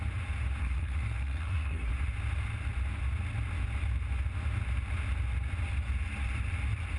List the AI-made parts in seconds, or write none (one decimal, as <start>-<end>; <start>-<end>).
0.6-1.9